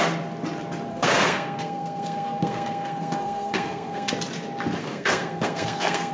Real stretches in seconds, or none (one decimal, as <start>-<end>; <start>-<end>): 0.0-0.9; 4.1-4.8